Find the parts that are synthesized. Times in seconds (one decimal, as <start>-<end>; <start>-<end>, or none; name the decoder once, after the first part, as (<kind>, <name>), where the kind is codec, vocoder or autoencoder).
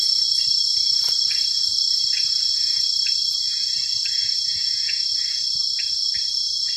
4.2-5.1 (vocoder, Vocos)